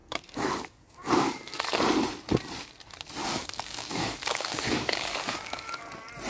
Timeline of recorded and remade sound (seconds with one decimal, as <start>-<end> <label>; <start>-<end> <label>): 0.0-1.6 remade; 1.6-3.2 recorded; 3.2-5.8 remade; 5.8-6.3 recorded